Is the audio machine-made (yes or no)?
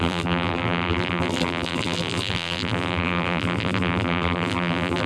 yes